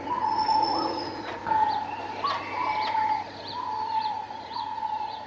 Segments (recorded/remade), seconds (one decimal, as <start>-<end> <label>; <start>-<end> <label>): 0.0-1.4 remade; 1.4-4.1 recorded; 4.1-5.3 remade